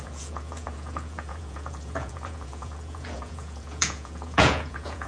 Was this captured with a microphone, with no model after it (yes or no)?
no